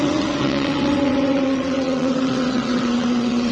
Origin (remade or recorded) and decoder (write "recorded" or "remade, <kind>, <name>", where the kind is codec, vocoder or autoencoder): remade, vocoder, WaveNeXt